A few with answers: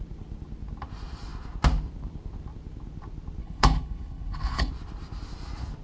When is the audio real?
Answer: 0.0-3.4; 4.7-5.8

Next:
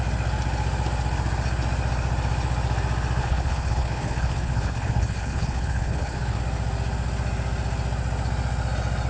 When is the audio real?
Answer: 0.0-3.2; 6.4-9.1

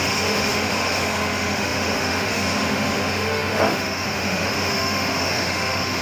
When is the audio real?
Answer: none

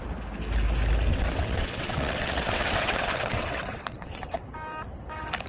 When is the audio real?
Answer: 0.0-1.1; 4.4-5.5

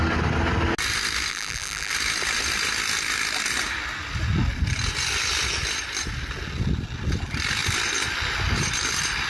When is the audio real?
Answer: 0.0-1.3; 1.9-9.3

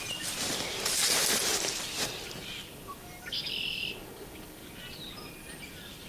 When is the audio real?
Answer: 0.0-1.4; 3.9-6.1